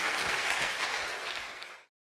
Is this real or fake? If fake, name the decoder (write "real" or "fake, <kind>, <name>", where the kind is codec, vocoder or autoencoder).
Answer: fake, codec, SNAC